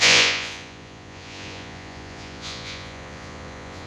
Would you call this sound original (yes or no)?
no